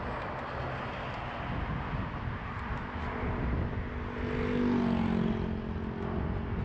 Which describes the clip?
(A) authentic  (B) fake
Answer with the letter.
A